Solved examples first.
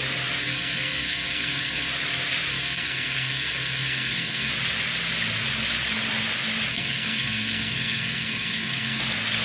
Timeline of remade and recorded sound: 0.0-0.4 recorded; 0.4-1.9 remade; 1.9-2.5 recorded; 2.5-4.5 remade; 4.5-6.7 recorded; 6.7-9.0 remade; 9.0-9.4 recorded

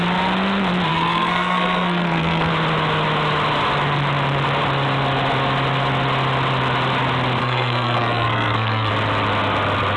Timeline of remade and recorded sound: 0.0-0.9 recorded; 0.9-2.5 remade; 2.5-7.4 recorded; 7.4-8.9 remade; 8.9-10.0 recorded